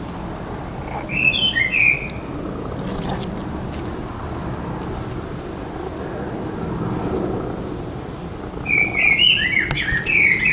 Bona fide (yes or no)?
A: yes